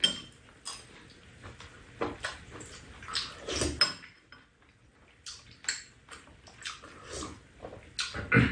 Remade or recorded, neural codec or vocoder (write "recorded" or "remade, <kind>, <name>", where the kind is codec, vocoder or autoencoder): recorded